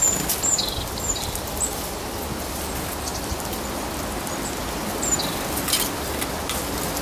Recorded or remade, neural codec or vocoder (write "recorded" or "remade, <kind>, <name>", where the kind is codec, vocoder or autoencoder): recorded